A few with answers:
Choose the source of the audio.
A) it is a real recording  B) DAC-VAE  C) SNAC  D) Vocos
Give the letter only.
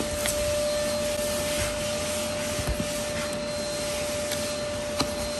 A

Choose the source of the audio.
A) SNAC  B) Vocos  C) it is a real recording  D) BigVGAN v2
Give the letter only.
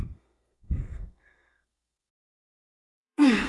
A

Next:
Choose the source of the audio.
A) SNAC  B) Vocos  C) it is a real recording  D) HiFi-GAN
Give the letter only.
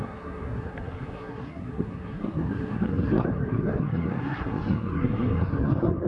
A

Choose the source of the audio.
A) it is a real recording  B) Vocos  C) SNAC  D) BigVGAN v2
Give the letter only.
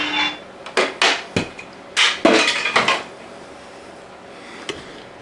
A